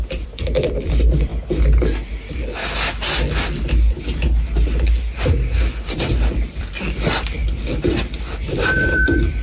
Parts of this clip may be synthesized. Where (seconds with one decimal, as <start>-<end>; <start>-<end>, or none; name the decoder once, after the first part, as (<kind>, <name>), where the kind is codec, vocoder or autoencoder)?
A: 0.0-1.3 (vocoder, BigVGAN v2); 5.9-9.4